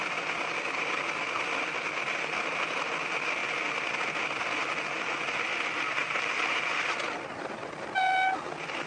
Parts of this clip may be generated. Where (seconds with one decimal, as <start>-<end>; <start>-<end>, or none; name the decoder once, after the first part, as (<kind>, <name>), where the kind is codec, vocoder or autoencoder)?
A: 6.0-6.8 (vocoder, BigVGAN v2)